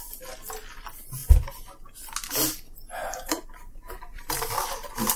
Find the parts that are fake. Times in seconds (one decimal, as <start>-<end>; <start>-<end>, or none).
3.0-4.5